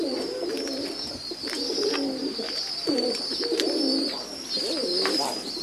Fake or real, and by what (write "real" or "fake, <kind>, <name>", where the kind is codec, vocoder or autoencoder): real